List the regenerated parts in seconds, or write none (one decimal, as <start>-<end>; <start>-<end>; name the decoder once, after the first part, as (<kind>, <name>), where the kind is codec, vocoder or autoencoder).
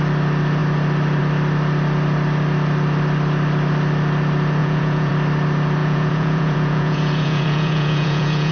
4.6-5.1 (vocoder, Vocos); 5.8-8.5